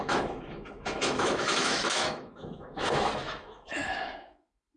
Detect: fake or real fake